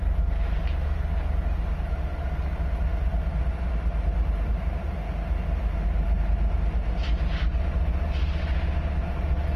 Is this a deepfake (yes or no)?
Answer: no